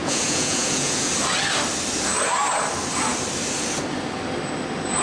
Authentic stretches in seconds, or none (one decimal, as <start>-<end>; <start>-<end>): 1.1-5.0